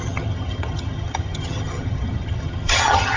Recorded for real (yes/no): no